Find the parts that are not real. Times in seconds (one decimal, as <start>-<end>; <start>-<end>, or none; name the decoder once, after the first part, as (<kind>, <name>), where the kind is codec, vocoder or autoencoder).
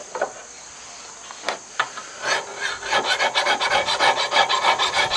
0.4-1.1 (vocoder, BigVGAN v2)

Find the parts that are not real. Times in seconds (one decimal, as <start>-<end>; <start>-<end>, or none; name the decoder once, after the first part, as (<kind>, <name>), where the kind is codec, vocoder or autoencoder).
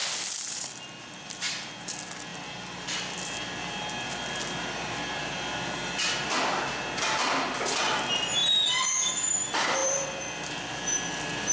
0.0-1.7 (vocoder, BigVGAN v2); 2.3-6.4; 8.4-9.1; 9.8-10.7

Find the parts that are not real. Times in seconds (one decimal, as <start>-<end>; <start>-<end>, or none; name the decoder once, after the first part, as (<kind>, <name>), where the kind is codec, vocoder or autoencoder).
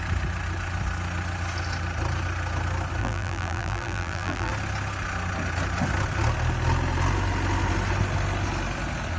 3.0-4.5 (vocoder, BigVGAN v2)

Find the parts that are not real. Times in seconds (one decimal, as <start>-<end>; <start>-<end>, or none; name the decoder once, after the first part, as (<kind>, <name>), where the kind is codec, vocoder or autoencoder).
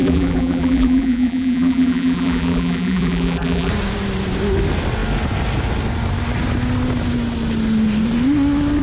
0.0-3.7 (vocoder, BigVGAN v2)